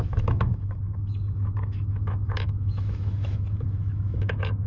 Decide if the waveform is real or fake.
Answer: fake